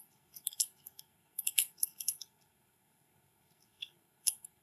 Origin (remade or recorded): remade